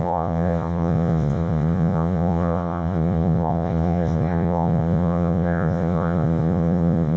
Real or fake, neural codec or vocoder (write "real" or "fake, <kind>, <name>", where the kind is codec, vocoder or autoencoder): fake, vocoder, Vocos